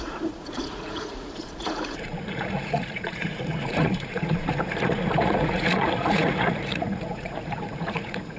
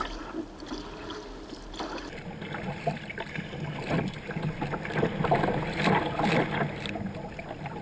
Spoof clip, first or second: first